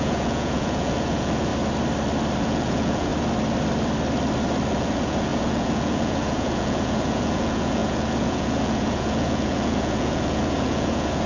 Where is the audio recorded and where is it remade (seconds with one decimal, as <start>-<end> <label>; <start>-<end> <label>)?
0.0-1.5 remade; 1.5-2.4 recorded; 2.4-3.1 remade; 3.1-4.7 recorded; 4.7-11.3 remade